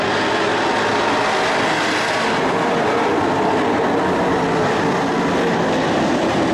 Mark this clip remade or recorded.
recorded